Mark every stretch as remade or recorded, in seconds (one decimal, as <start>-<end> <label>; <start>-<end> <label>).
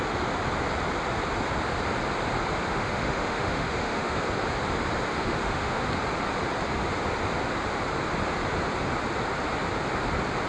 0.0-2.7 recorded; 2.7-4.2 remade; 4.2-5.1 recorded; 5.1-5.9 remade; 5.9-10.5 recorded